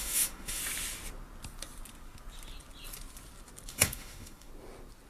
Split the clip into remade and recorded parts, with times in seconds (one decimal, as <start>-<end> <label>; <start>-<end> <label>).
0.0-0.6 remade; 0.6-3.7 recorded; 3.7-4.5 remade; 4.5-5.1 recorded